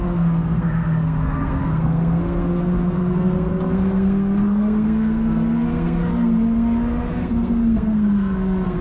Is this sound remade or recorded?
remade